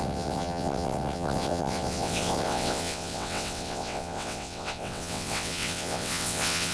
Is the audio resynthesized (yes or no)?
yes